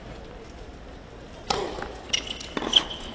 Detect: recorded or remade recorded